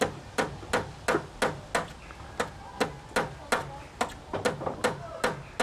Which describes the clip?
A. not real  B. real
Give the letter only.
B